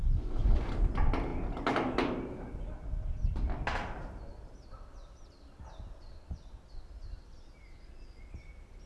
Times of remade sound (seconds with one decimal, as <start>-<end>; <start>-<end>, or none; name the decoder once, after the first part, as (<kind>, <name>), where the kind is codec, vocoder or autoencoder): 0.0-0.7 (vocoder, Vocos)